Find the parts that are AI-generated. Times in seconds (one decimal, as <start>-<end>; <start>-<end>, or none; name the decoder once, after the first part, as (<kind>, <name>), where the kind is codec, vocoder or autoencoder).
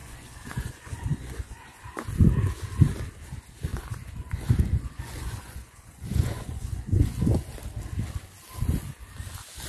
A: 0.0-2.1 (vocoder, Vocos); 3.7-7.5